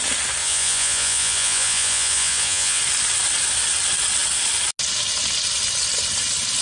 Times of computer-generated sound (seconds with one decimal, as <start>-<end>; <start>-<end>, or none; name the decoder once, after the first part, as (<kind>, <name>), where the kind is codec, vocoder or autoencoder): 0.4-2.8 (vocoder, Vocos)